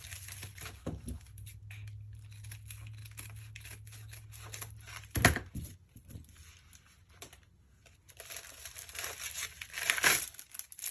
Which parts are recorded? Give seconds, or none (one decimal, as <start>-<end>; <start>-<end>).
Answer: 0.0-10.9